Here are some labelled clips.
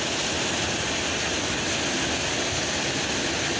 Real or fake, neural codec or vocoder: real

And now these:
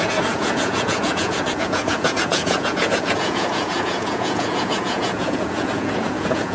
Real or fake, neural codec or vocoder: fake, vocoder, Vocos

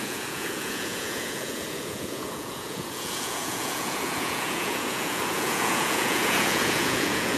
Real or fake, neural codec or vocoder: fake, vocoder, Vocos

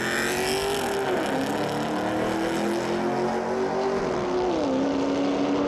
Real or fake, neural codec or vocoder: real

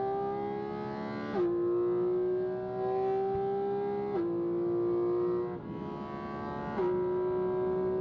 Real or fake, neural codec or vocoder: real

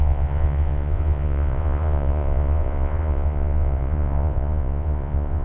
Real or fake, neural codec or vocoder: fake, vocoder, Vocos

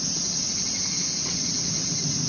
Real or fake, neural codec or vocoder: real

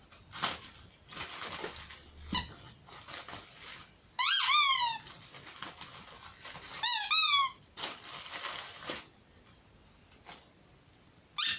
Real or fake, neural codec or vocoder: real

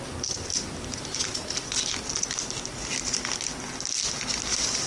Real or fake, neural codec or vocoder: real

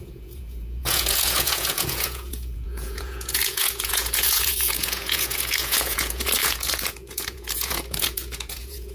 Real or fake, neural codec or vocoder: fake, vocoder, Vocos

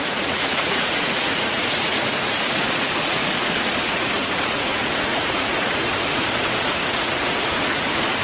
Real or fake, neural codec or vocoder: fake, vocoder, Vocos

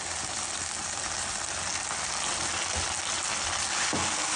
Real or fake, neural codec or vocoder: real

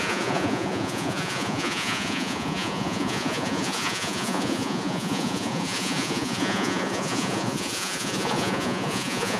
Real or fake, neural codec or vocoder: fake, vocoder, Vocos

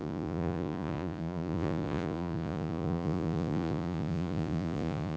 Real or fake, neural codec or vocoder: fake, vocoder, Vocos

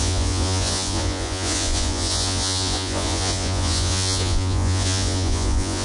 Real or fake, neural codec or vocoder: fake, vocoder, Vocos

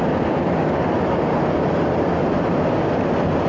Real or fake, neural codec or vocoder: real